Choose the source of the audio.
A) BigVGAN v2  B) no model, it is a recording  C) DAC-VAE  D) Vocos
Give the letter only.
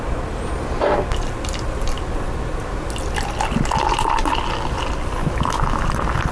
B